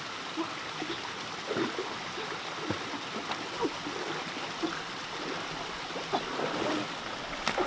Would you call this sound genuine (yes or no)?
yes